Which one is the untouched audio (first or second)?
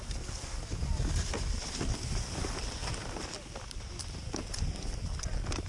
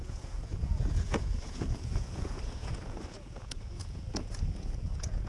first